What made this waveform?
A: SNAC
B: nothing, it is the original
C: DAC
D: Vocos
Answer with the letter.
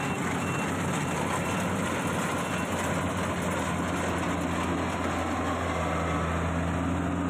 B